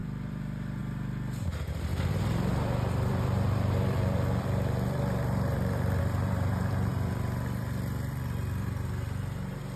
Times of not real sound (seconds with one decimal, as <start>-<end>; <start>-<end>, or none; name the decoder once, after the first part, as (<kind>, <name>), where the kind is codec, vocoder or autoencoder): 0.0-9.8 (vocoder, BigVGAN v2)